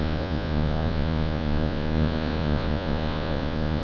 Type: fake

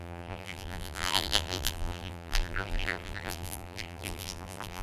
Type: fake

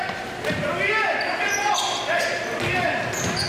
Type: real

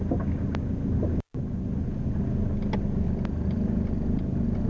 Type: real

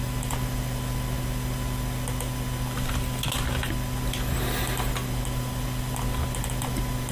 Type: real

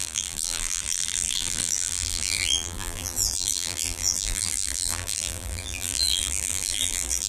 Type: fake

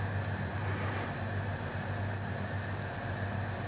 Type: real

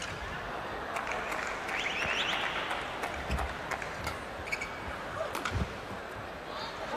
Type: real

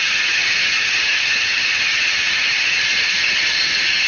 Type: fake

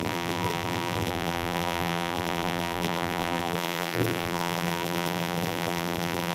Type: fake